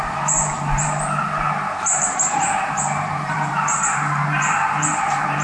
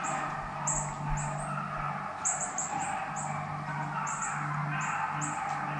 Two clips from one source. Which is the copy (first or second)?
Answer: first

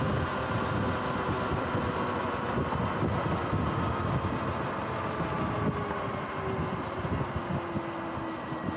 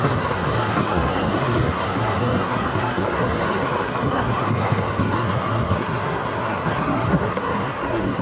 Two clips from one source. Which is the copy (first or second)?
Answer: second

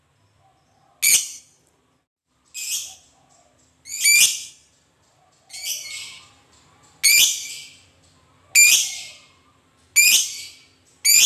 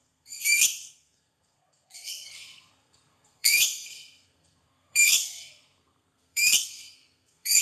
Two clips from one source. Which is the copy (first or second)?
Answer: second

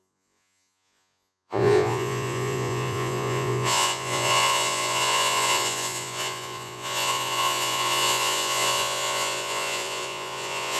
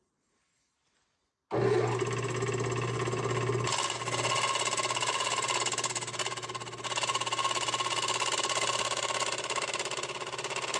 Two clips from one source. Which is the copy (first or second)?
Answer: first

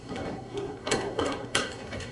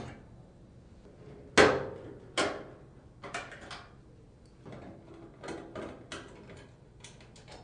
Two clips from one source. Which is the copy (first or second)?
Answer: first